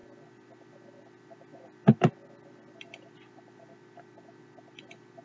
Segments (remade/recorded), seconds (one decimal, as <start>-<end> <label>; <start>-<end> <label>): 0.0-5.2 recorded